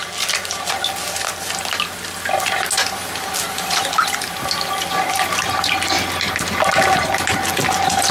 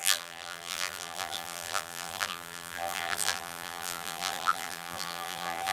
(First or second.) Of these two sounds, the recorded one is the first